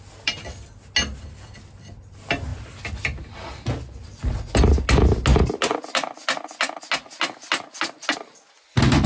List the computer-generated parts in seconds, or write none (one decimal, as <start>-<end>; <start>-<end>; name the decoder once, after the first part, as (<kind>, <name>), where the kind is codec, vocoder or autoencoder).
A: none